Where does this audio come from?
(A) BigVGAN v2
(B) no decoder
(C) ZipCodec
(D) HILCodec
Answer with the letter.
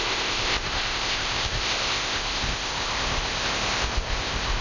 C